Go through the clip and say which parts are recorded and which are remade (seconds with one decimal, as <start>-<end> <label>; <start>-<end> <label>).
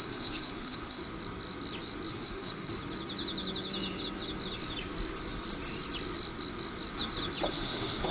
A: 0.0-1.0 remade; 1.0-2.1 recorded; 2.1-2.7 remade; 2.7-7.5 recorded; 7.5-8.1 remade